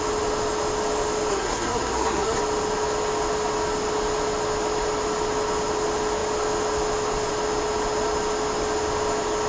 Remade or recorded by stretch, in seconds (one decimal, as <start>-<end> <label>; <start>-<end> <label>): 0.0-1.3 recorded; 1.3-2.4 remade; 2.4-9.5 recorded

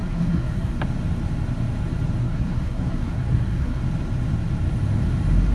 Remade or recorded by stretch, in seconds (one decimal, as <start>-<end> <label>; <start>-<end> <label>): 0.0-0.8 remade; 0.8-2.2 recorded; 2.2-3.8 remade; 3.8-5.5 recorded